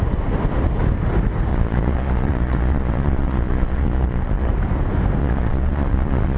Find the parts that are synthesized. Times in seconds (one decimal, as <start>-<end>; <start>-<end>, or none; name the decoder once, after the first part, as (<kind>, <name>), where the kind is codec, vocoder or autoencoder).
1.5-4.5 (vocoder, Vocos); 5.2-6.4